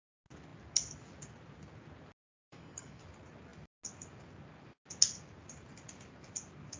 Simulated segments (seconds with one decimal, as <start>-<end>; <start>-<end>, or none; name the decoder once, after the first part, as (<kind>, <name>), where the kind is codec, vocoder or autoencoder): 2.2-3.0 (codec, DAC)

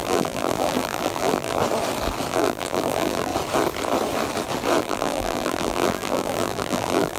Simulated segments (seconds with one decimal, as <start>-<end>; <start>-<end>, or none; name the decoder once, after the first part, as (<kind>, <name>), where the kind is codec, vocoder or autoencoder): 0.0-1.6 (vocoder, BigVGAN v2); 2.3-3.3; 4.8-7.2

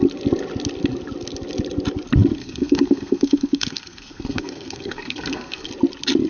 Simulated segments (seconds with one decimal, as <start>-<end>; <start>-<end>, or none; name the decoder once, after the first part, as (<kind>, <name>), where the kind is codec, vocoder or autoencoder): 2.4-5.7 (codec, SNAC)

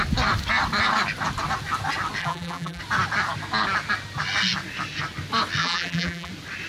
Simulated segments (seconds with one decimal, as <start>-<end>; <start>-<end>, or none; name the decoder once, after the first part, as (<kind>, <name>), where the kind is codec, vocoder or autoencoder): 2.2-2.8 (vocoder, BigVGAN v2); 5.6-6.3

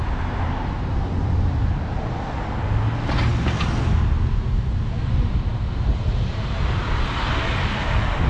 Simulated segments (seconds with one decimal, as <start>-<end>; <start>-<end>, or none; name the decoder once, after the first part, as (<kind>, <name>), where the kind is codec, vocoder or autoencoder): none

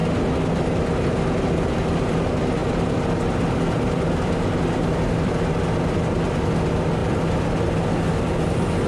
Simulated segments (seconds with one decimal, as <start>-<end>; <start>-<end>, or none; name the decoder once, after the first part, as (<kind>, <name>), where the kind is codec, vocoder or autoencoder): none

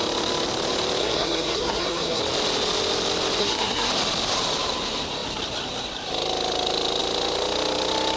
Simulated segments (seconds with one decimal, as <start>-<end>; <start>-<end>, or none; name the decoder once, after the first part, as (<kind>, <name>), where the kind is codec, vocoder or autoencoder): 1.0-2.2 (codec, SNAC); 3.4-3.9